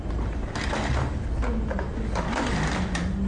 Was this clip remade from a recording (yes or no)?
no